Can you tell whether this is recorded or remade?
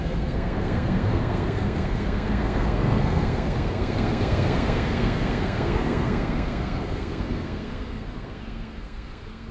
remade